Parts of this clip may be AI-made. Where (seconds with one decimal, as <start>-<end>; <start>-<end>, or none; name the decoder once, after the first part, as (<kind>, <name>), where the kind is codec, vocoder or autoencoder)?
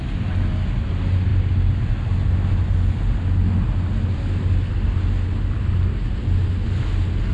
none